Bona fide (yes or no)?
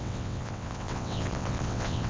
no